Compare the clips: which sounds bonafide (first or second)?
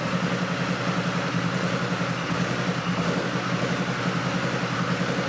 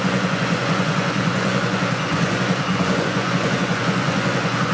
first